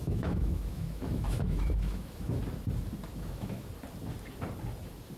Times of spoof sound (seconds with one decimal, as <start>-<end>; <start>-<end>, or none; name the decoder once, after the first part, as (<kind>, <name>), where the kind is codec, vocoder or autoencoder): 0.0-2.4 (autoencoder, DAC-VAE); 3.1-3.7